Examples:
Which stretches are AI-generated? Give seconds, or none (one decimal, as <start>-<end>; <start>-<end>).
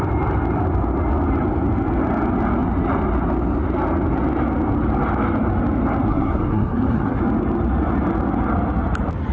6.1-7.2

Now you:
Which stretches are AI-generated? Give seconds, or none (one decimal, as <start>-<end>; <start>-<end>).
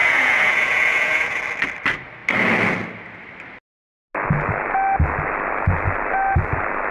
0.0-1.4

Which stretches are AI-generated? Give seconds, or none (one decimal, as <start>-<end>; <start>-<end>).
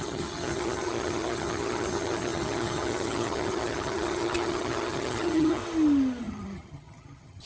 0.0-5.6; 6.2-7.5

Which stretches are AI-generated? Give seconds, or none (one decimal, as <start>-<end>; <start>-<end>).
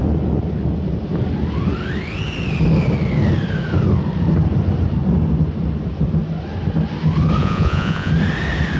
7.4-8.1